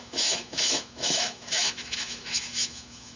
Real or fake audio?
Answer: fake